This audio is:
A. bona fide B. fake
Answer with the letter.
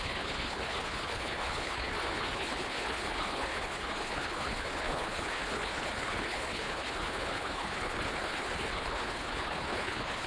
B